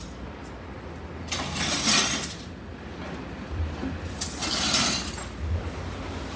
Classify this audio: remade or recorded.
recorded